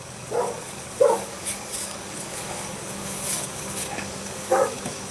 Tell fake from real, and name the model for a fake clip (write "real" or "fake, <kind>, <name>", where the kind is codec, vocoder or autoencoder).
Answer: fake, codec, DAC